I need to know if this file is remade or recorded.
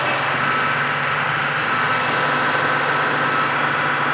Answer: recorded